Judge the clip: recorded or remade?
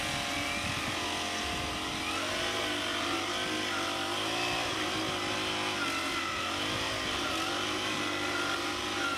recorded